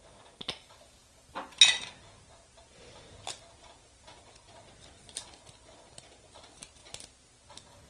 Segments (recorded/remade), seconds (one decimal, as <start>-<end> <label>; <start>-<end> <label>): 0.0-7.9 recorded